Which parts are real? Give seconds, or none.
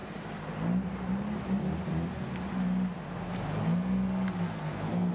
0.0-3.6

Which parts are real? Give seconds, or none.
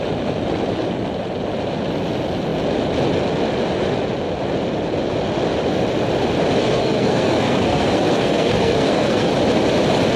0.0-6.6; 9.3-10.2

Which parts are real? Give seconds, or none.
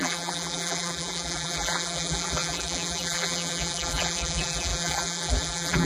none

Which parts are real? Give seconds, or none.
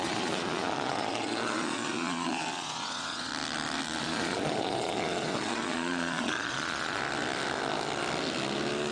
3.3-4.0; 7.0-8.9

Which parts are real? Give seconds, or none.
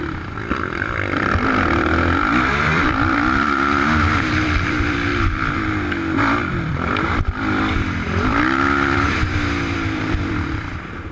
5.1-6.5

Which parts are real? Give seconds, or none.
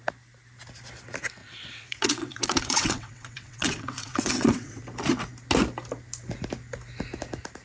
0.0-1.4; 4.8-7.6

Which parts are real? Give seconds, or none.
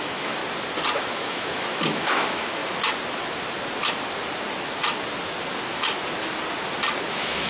0.4-1.0; 2.6-7.1